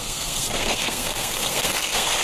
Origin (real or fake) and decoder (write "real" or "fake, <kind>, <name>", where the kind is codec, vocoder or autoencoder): fake, codec, SNAC